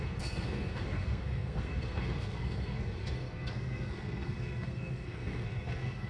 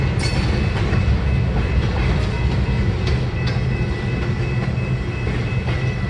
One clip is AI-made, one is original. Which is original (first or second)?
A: second